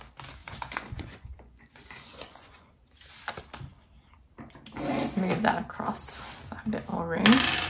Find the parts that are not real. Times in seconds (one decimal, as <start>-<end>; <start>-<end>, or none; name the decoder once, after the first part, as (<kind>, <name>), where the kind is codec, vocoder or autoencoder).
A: 0.4-2.7 (vocoder, Vocos)